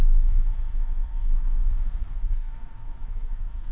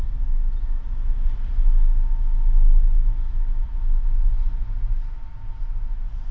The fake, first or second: first